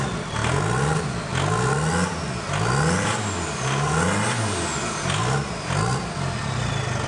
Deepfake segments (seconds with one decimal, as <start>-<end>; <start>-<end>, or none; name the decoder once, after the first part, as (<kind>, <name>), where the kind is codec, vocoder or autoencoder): none